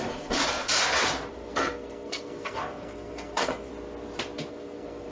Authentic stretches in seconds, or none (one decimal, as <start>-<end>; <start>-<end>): 0.4-1.3; 3.7-4.5